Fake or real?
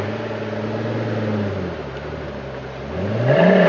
real